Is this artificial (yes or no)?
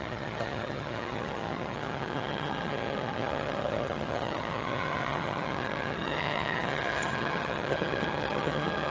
yes